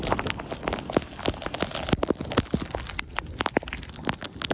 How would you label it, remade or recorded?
recorded